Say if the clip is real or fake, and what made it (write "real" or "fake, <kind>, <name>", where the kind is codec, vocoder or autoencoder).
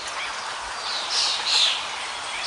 real